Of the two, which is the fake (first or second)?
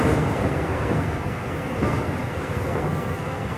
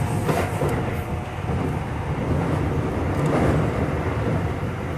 first